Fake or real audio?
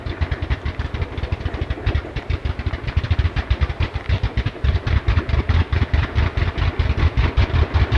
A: real